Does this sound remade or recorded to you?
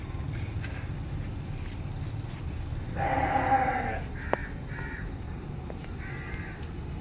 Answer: recorded